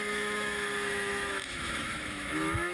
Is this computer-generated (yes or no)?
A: yes